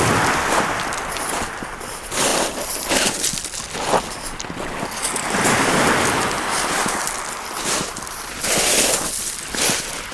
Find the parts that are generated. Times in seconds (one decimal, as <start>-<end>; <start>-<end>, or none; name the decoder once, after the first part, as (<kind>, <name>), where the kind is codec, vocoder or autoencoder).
none